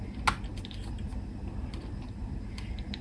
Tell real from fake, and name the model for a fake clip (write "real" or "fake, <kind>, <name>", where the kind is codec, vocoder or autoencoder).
real